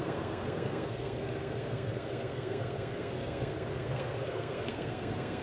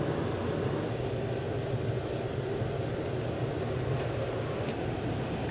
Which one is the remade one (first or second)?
first